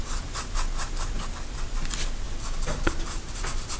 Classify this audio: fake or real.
real